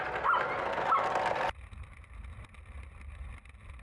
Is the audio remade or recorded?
recorded